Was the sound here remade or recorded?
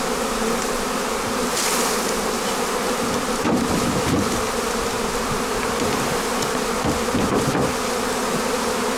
recorded